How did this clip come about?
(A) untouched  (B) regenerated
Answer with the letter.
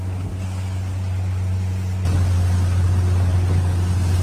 A